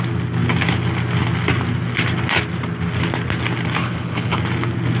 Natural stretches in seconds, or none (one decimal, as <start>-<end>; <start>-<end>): 0.0-3.8; 4.4-5.0